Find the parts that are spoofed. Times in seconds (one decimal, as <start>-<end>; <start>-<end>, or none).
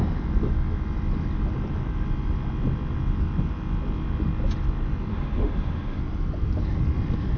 5.1-6.0